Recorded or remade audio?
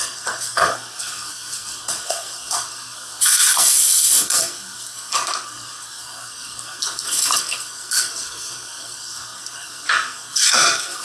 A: remade